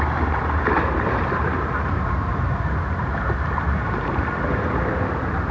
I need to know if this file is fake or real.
fake